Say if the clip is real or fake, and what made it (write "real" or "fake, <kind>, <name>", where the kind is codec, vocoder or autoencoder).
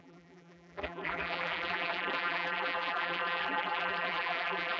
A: fake, vocoder, BigVGAN v2